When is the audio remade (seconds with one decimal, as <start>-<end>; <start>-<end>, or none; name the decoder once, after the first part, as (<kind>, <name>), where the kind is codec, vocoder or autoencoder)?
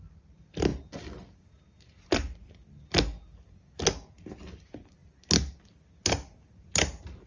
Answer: none